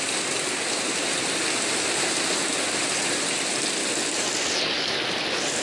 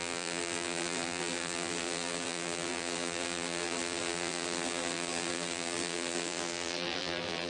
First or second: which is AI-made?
second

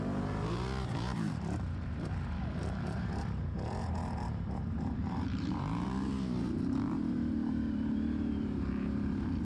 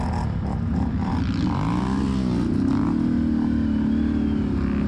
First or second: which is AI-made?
first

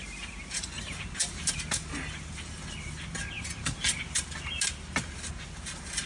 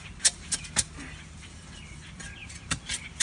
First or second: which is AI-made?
second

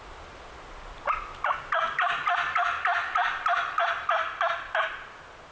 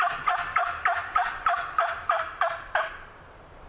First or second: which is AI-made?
second